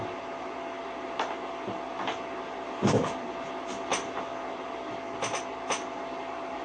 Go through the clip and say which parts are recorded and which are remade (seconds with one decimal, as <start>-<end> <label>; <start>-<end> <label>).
0.0-6.6 recorded